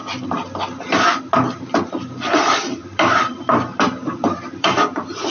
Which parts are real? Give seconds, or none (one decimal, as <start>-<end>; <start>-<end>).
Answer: 0.0-2.8